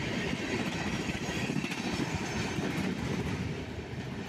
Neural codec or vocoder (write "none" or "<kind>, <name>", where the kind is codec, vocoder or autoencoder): none